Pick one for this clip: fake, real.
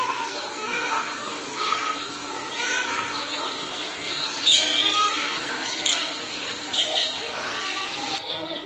fake